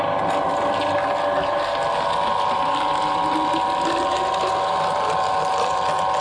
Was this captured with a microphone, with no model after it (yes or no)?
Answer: yes